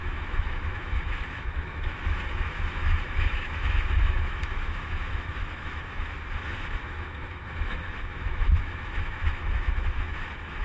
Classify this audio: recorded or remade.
remade